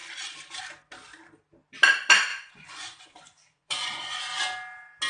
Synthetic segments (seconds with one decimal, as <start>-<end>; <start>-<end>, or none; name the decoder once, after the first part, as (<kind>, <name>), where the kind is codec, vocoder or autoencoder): 2.3-4.4 (vocoder, Vocos)